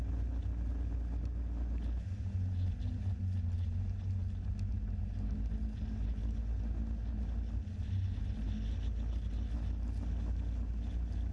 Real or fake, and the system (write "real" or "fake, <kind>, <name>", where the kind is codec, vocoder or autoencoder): real